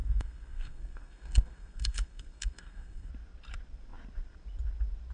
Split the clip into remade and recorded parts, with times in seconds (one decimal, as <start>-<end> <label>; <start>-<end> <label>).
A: 0.0-3.1 remade; 3.1-5.1 recorded